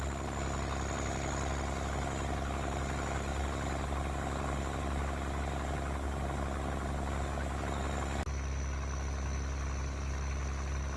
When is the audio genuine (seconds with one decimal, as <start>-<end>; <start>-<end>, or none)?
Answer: 0.0-11.0